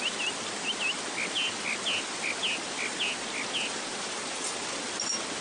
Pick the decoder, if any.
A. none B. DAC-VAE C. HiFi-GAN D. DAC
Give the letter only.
A